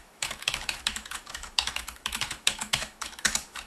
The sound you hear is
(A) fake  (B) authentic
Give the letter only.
A